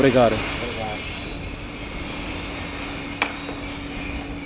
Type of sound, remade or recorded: recorded